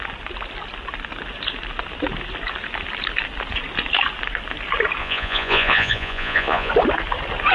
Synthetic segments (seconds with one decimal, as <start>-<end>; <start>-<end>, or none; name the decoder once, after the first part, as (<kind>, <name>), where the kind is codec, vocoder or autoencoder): 5.0-6.7 (vocoder, Vocos)